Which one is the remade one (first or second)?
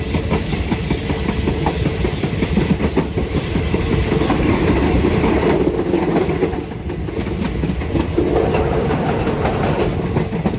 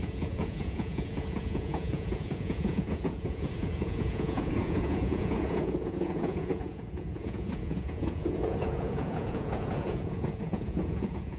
second